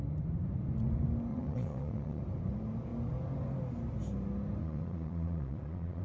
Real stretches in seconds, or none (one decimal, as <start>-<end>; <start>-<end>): 0.0-1.3; 2.2-4.6